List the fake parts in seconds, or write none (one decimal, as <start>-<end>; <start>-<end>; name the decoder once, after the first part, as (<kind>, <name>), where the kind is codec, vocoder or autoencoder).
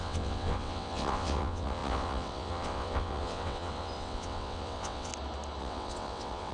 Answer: 0.0-5.1 (vocoder, WaveNeXt); 5.6-6.5